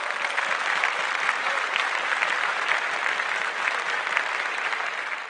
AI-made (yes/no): no